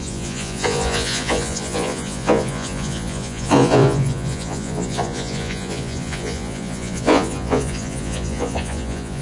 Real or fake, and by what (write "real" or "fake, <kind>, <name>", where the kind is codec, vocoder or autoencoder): fake, vocoder, Vocos